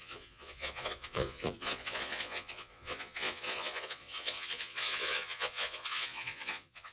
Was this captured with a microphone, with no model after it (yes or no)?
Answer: no